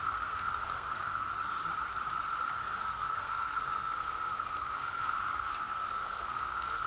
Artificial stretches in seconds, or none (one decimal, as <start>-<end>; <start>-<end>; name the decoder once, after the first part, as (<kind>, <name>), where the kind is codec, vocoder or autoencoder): 0.0-1.3 (codec, SNAC); 2.6-6.9